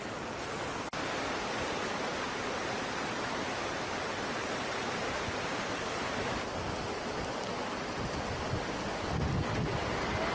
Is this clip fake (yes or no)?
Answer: no